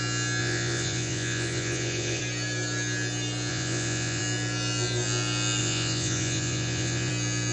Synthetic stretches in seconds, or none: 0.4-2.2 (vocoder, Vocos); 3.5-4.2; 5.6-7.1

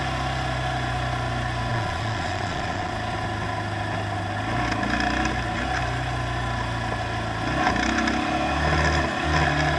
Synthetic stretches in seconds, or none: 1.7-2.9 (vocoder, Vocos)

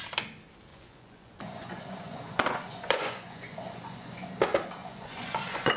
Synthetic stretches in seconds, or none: 0.7-4.2 (vocoder, Vocos); 4.8-5.8

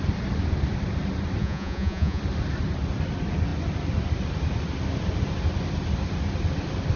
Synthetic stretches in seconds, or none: 1.4-2.2 (vocoder, Vocos)